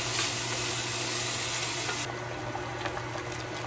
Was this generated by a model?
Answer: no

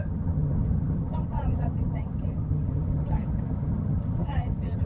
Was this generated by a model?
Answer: yes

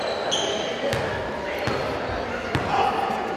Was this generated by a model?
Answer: no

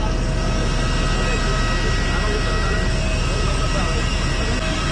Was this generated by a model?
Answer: no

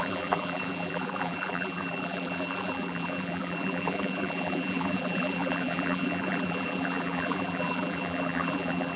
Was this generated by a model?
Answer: yes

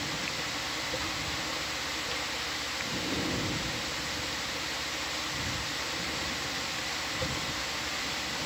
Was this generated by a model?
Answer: yes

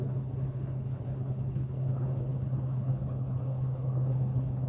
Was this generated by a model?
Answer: yes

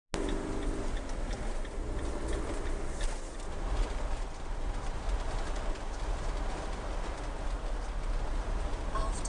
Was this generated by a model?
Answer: no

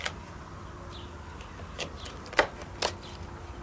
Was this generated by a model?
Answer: no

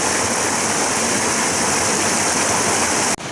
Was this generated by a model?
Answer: no